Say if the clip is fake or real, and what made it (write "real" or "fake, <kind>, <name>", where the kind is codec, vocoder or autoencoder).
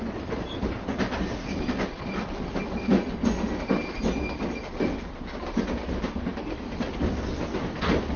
real